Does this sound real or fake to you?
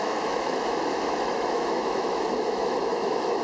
fake